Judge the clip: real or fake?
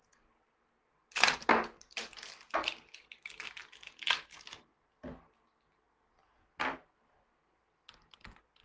real